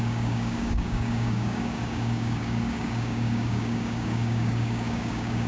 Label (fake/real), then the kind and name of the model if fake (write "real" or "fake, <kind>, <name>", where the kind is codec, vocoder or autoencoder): fake, codec, DAC